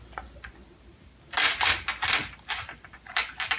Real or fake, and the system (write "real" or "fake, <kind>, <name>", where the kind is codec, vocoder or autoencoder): real